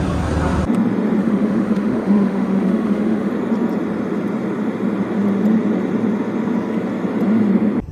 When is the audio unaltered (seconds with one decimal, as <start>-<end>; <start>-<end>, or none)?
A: 0.0-1.2; 3.3-7.9